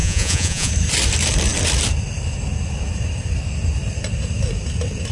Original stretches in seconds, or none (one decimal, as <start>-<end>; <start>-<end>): 0.7-5.1